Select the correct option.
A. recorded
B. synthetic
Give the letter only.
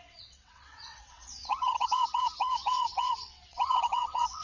B